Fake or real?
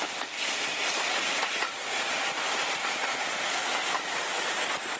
real